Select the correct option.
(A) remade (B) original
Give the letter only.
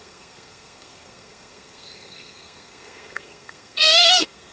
A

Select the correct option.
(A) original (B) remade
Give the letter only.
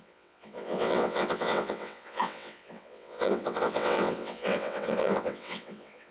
B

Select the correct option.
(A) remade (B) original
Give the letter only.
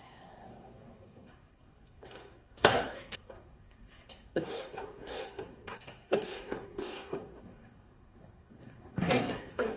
A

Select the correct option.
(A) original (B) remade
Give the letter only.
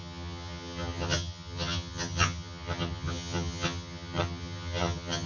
B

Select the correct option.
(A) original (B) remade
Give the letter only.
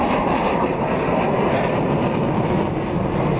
B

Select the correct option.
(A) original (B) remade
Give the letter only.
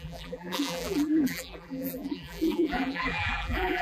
B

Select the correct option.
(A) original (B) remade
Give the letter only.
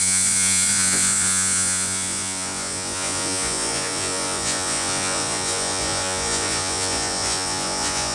B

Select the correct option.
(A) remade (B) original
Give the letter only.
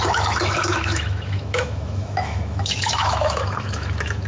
A